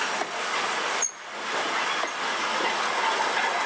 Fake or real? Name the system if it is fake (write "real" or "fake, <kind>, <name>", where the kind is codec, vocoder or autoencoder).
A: real